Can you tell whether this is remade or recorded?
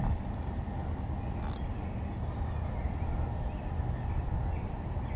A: recorded